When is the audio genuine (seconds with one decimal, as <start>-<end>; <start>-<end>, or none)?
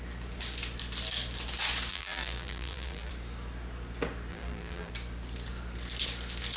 0.0-1.9; 3.1-4.3; 4.9-6.6